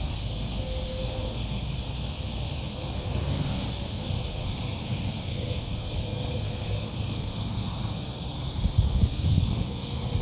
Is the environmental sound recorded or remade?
remade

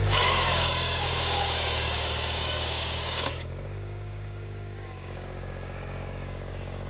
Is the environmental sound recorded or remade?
remade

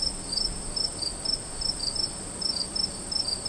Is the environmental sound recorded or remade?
recorded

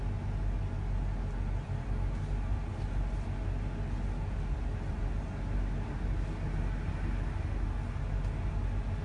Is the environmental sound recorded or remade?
recorded